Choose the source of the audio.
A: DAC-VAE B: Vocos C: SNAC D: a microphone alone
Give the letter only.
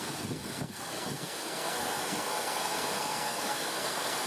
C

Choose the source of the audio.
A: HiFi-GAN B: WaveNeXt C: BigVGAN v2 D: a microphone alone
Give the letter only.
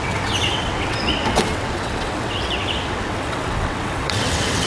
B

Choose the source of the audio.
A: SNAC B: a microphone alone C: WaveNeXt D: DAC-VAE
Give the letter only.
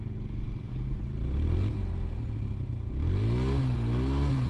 B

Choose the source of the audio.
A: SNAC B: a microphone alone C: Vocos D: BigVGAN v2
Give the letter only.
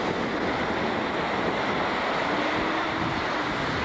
B